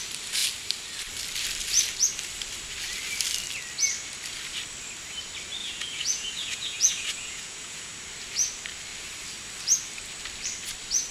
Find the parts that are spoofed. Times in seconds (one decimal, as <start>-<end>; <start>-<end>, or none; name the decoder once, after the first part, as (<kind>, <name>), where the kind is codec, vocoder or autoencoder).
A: 5.6-7.9 (vocoder, Vocos)